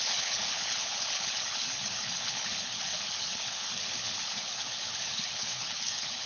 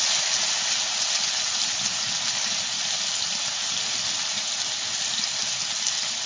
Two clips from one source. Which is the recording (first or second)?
second